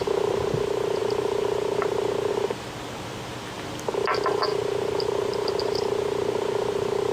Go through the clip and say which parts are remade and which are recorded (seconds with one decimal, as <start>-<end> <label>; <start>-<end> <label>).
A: 0.0-4.5 recorded; 4.5-7.1 remade